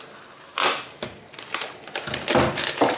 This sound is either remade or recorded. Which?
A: remade